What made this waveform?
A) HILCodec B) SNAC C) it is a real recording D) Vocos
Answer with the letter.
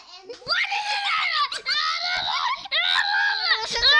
C